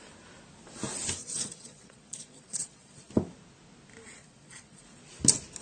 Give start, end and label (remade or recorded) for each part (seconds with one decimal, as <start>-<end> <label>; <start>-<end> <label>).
0.0-1.2 recorded; 1.2-3.1 remade; 3.1-4.2 recorded; 4.2-4.8 remade; 4.8-5.6 recorded